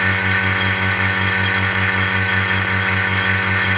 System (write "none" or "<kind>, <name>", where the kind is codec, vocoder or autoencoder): autoencoder, DAC-VAE